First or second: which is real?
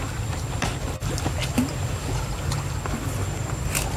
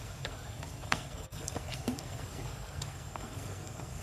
first